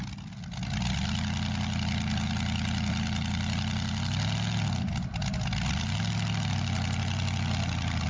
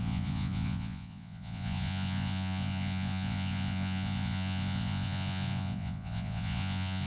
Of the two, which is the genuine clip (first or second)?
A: first